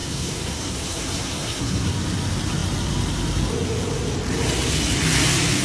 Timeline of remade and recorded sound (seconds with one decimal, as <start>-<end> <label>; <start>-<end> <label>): 0.0-1.9 remade; 1.9-5.6 recorded